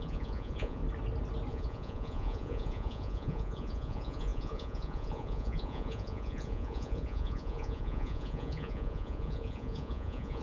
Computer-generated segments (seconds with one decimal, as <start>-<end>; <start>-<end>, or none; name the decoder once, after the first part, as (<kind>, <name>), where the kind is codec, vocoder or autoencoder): 0.0-0.8 (vocoder, Vocos); 1.5-10.4